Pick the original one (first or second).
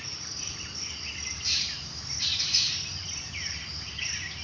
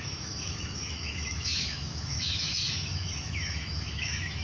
first